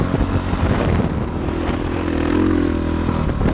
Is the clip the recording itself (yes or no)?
yes